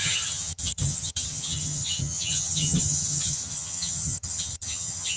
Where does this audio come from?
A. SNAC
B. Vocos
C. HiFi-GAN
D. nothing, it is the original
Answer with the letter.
C